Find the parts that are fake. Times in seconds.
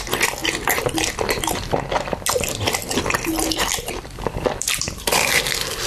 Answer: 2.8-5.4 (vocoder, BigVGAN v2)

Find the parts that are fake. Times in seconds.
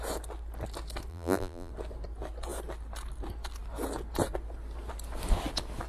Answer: 1.1-1.7 (vocoder, BigVGAN v2)